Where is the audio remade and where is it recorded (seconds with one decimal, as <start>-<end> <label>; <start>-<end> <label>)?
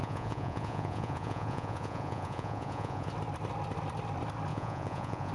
0.0-3.1 remade; 3.1-4.5 recorded; 4.5-5.3 remade